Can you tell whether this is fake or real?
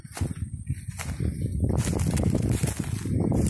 real